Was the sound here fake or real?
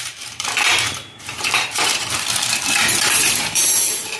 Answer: fake